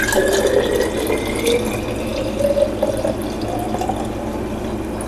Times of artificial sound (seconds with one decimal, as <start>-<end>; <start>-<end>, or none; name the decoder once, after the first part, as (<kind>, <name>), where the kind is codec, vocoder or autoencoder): none